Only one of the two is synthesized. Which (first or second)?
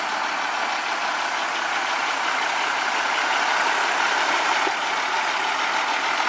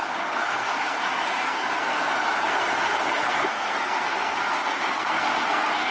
second